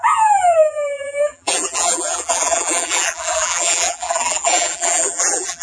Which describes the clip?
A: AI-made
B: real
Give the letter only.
A